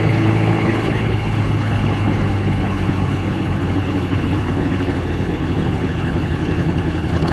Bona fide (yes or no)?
no